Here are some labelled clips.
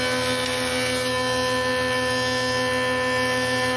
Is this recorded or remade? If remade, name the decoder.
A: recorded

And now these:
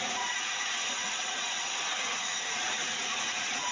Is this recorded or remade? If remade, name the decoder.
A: remade, vocoder, Vocos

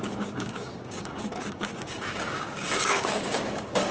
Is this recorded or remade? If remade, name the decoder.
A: remade, codec, DAC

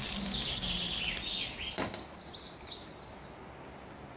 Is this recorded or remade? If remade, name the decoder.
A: recorded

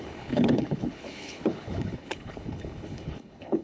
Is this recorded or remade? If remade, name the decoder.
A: remade, codec, HILCodec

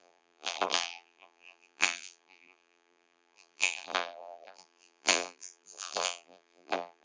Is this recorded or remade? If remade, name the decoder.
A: remade, vocoder, BigVGAN v2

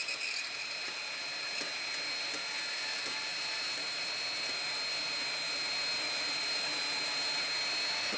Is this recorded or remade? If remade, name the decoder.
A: recorded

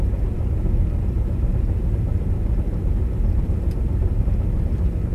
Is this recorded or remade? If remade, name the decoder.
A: remade, vocoder, BigVGAN v2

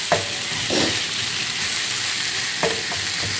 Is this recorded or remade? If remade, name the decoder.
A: recorded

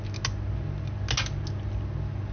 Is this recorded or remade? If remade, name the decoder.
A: recorded